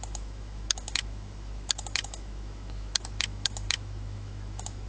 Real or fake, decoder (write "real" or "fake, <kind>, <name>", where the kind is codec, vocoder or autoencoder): fake, autoencoder, DAC-VAE